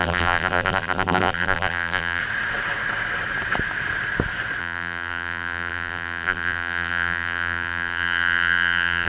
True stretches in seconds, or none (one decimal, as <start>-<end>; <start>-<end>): 2.2-4.6